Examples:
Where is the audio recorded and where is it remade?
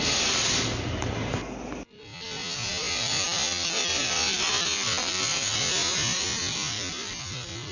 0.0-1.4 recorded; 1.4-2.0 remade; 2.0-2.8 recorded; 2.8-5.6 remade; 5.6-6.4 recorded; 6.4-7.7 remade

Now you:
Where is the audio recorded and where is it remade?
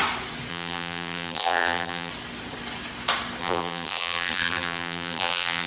0.0-0.5 recorded; 0.5-2.1 remade; 2.1-3.4 recorded; 3.4-5.7 remade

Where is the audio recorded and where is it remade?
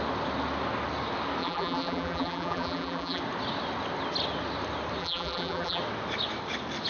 0.0-1.4 recorded; 1.4-3.2 remade; 3.2-5.0 recorded; 5.0-5.8 remade; 5.8-6.9 recorded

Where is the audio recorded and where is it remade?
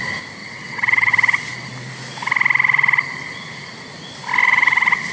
0.0-0.4 recorded; 0.4-1.1 remade; 1.1-5.1 recorded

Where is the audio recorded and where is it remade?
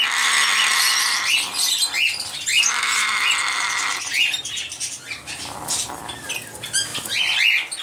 0.0-7.8 recorded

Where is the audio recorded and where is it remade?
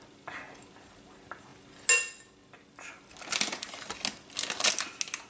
0.0-5.3 recorded